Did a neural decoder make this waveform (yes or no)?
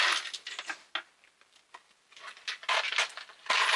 no